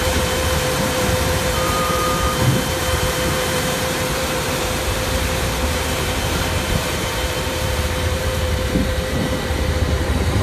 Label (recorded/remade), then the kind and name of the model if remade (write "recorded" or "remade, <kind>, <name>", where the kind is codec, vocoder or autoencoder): remade, vocoder, BigVGAN v2